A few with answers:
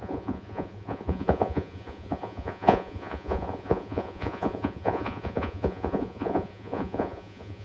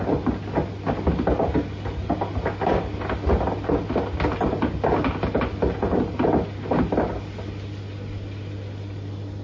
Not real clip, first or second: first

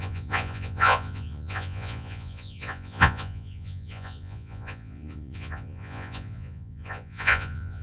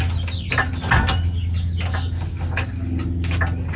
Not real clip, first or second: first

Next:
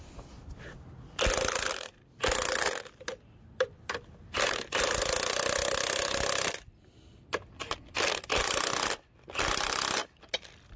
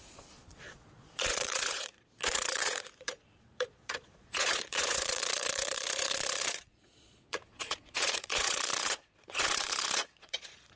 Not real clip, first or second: second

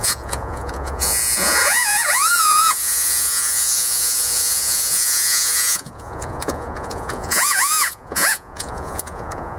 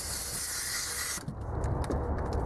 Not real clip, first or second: first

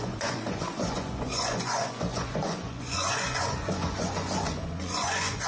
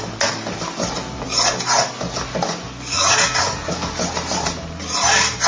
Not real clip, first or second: first